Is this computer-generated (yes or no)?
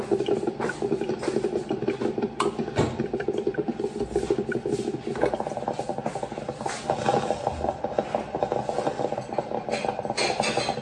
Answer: no